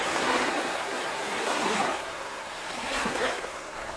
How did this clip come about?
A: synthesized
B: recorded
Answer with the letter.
A